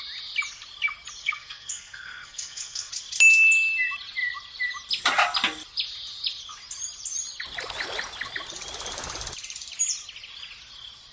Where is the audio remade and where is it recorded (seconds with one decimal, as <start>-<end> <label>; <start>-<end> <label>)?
0.0-1.2 recorded; 1.2-2.9 remade; 2.9-11.1 recorded